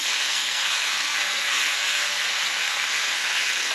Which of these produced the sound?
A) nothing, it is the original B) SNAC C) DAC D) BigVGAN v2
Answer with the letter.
B